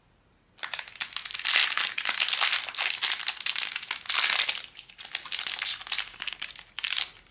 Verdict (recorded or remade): recorded